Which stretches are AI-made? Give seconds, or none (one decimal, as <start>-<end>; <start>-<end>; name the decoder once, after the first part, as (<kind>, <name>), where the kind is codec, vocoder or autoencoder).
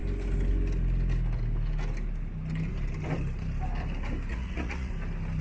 4.3-4.9 (vocoder, Vocos)